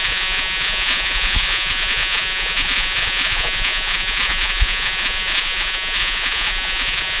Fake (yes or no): yes